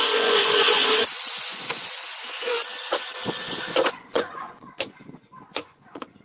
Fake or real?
fake